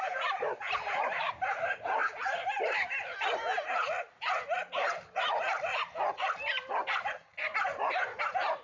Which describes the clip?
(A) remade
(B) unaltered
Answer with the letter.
B